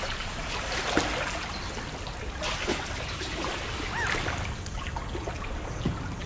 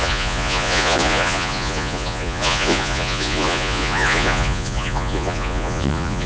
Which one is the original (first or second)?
first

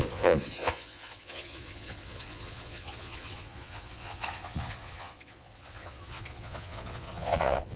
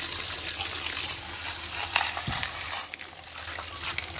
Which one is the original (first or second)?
second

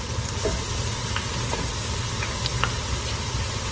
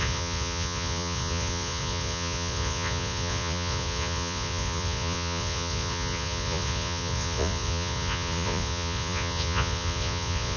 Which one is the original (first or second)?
first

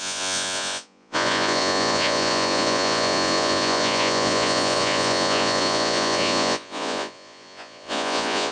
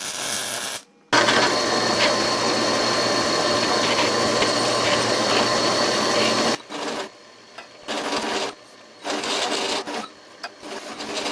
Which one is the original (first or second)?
second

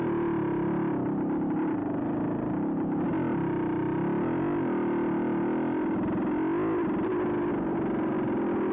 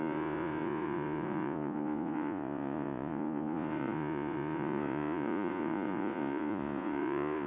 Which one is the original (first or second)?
first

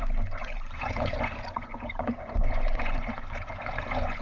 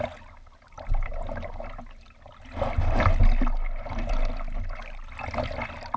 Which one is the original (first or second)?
second